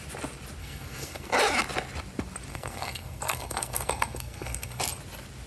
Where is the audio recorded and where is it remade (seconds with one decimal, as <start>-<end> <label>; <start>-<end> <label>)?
0.0-0.6 recorded; 0.6-1.3 remade; 1.3-2.5 recorded; 2.5-4.8 remade; 4.8-5.5 recorded